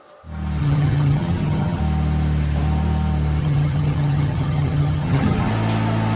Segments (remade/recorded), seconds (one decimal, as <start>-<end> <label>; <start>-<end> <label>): 0.0-0.6 recorded; 0.6-1.8 remade; 1.8-3.4 recorded; 3.4-5.5 remade; 5.5-6.2 recorded